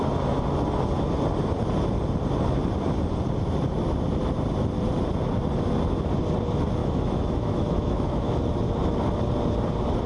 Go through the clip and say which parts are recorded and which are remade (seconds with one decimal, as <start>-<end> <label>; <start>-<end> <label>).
0.0-6.8 recorded; 6.8-8.4 remade; 8.4-10.1 recorded

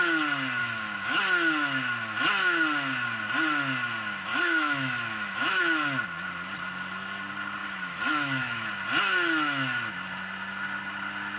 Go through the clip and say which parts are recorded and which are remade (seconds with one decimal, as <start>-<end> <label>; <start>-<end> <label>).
0.0-0.6 recorded; 0.6-1.2 remade; 1.2-4.3 recorded; 4.3-5.6 remade; 5.6-7.6 recorded; 7.6-8.7 remade; 8.7-11.4 recorded

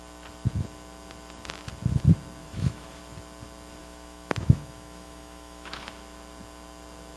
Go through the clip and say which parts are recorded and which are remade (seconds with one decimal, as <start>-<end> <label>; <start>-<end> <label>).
0.0-2.4 recorded; 2.4-3.0 remade; 3.0-3.8 recorded; 3.8-5.9 remade; 5.9-7.2 recorded

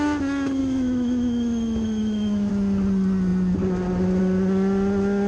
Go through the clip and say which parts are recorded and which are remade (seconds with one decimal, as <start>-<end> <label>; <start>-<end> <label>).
0.0-0.6 recorded; 0.6-2.5 remade; 2.5-5.3 recorded